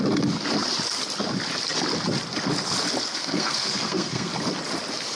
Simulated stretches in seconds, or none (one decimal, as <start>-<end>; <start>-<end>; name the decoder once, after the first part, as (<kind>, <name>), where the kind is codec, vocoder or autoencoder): 3.1-4.3 (codec, SNAC)

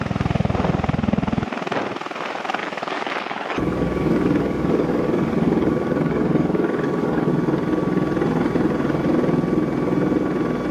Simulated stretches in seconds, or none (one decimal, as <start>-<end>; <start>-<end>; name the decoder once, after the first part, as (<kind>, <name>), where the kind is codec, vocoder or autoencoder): 2.6-7.3 (codec, DAC)

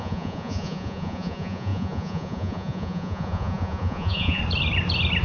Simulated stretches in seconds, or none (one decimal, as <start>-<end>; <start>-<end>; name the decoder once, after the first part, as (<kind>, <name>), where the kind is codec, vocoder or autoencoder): 0.0-4.4 (vocoder, Vocos)

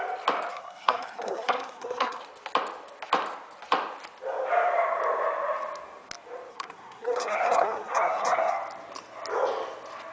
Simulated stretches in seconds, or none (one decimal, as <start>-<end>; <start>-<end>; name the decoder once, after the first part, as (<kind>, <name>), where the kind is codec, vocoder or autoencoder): 0.5-2.2 (codec, SNAC); 6.5-8.5